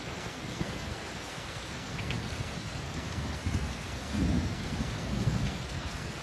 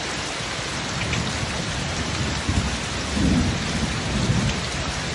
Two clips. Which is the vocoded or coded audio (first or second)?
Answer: first